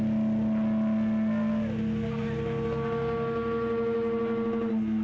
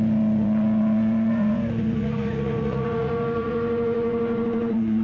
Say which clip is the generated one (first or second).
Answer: second